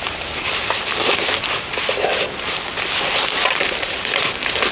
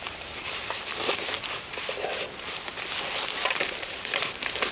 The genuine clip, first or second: first